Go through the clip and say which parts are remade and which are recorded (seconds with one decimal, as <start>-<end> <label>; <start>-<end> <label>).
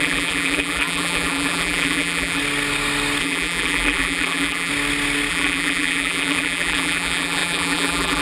0.0-2.4 remade; 2.4-3.2 recorded; 3.2-4.7 remade; 4.7-5.3 recorded; 5.3-8.2 remade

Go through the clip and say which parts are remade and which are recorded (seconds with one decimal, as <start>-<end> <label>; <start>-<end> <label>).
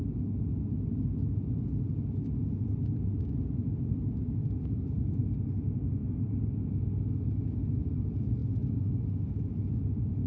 0.0-4.4 recorded; 4.4-5.1 remade; 5.1-6.0 recorded; 6.0-6.6 remade; 6.6-10.3 recorded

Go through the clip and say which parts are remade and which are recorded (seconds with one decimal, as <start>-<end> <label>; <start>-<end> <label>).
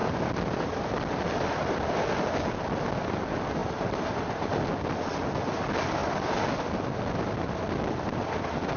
0.0-1.9 remade; 1.9-3.6 recorded; 3.6-4.5 remade; 4.5-6.0 recorded; 6.0-7.0 remade; 7.0-8.8 recorded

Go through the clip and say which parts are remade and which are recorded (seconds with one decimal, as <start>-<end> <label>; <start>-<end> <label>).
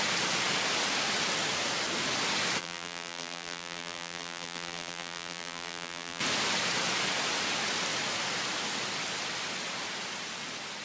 0.0-2.6 recorded; 2.6-6.2 remade; 6.2-10.8 recorded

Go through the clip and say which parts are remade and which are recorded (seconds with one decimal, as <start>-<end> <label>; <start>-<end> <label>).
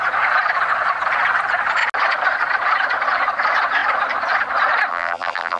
0.0-4.9 recorded; 4.9-5.6 remade